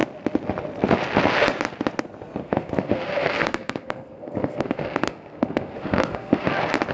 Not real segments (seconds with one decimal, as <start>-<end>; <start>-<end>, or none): 2.4-6.5